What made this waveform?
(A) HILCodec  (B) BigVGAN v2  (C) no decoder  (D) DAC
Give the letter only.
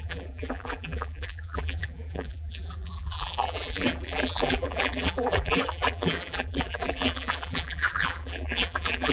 B